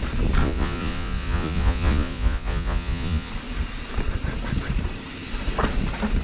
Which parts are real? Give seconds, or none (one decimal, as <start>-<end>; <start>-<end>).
0.0-0.4; 3.3-6.2